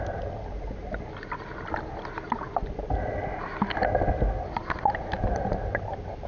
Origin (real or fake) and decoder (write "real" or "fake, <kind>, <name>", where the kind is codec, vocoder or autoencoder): real